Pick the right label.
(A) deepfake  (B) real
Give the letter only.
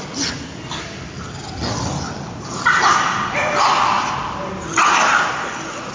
B